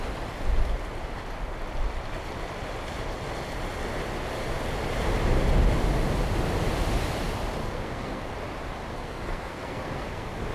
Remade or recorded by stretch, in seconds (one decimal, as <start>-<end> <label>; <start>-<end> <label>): 0.0-7.6 recorded; 7.6-8.3 remade; 8.3-8.9 recorded; 8.9-10.5 remade